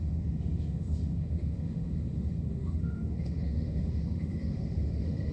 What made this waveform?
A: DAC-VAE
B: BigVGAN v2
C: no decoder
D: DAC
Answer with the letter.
A